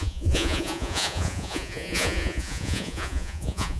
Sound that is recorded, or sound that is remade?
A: remade